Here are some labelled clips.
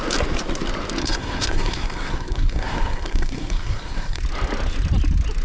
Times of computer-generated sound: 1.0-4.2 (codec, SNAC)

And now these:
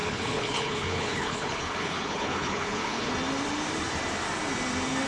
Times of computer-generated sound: 0.0-3.1 (codec, HILCodec)

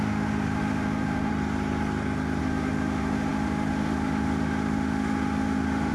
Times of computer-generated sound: 0.0-1.3 (autoencoder, DAC-VAE); 2.4-5.9

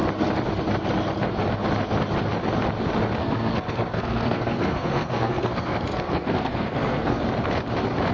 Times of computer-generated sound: 3.2-7.2 (codec, SNAC)

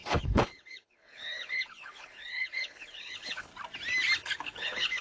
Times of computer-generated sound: 0.0-3.5 (codec, HILCodec); 4.2-5.0

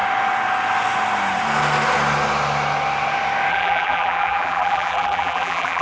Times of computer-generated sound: 3.5-5.8 (vocoder, BigVGAN v2)